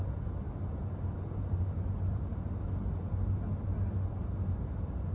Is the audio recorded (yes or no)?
yes